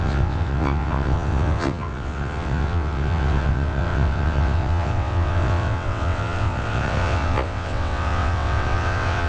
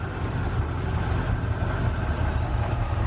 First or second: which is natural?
second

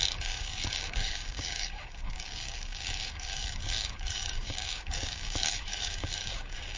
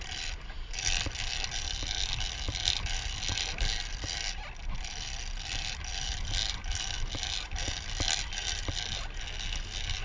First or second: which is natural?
second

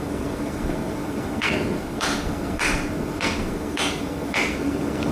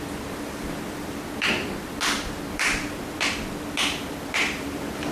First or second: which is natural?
second